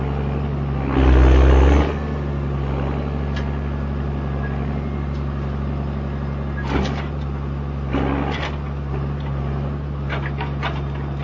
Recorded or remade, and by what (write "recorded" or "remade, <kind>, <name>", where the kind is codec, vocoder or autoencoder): recorded